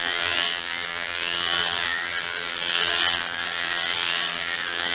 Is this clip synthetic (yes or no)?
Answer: yes